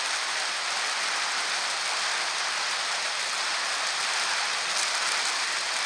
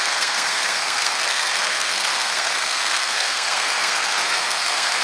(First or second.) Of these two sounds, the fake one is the second